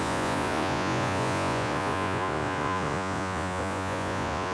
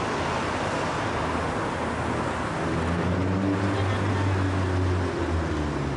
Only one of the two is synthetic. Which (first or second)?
first